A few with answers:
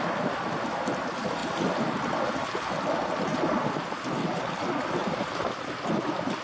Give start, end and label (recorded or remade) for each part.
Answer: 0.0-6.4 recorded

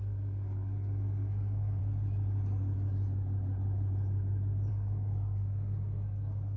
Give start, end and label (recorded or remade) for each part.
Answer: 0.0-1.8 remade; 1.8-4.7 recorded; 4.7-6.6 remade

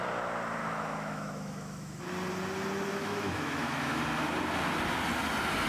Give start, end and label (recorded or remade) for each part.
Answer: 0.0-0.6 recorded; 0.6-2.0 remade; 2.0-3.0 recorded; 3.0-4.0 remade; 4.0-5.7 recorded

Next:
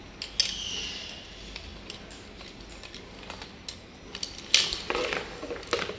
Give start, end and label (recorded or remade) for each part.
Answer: 0.0-6.0 recorded

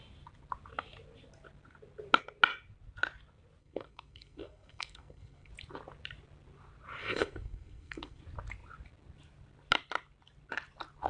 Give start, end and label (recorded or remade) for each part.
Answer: 0.0-3.6 recorded; 3.6-5.5 remade; 5.5-7.0 recorded; 7.0-8.2 remade; 8.2-11.1 recorded

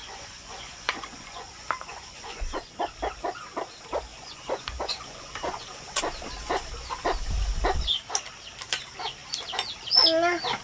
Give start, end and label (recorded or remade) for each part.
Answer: 0.0-2.9 remade; 2.9-4.1 recorded; 4.1-6.0 remade; 6.0-10.6 recorded